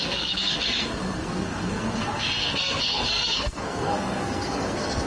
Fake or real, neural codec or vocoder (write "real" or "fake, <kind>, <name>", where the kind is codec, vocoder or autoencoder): fake, codec, SNAC